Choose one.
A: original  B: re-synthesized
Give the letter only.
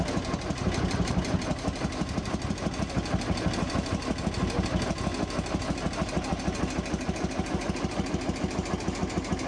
A